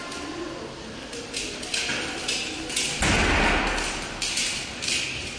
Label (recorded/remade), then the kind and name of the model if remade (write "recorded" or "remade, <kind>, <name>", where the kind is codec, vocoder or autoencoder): recorded